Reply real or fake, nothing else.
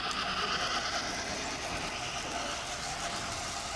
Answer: real